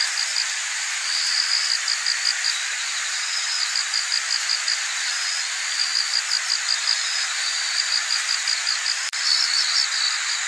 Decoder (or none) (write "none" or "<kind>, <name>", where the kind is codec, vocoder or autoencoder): none